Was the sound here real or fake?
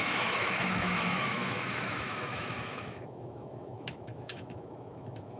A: fake